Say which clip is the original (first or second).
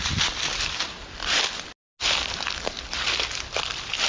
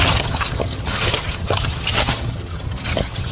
first